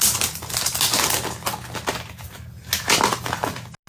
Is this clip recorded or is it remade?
recorded